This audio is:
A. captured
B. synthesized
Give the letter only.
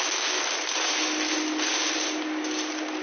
A